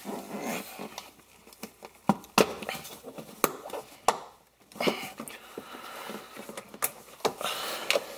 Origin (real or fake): real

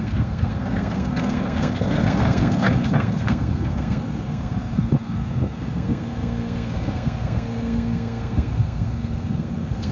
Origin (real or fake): fake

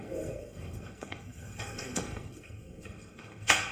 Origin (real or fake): fake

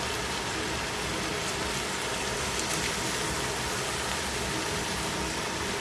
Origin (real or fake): real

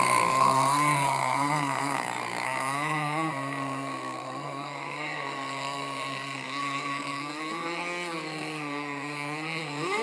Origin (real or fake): fake